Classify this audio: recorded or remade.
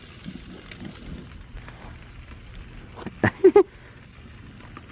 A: recorded